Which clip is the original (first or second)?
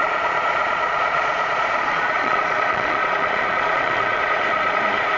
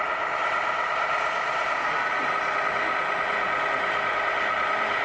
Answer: second